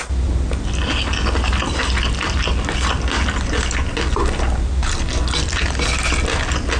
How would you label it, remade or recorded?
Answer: recorded